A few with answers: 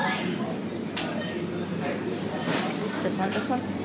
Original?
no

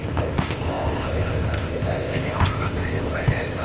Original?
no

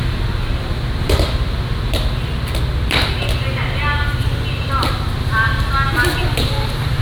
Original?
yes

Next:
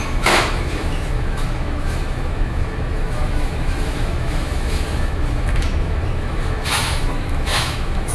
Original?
no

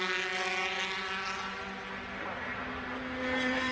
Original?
yes